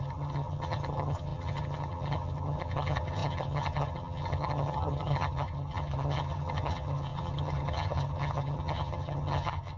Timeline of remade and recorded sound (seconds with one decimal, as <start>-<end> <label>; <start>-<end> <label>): 0.0-9.8 remade